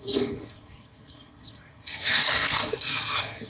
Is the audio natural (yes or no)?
no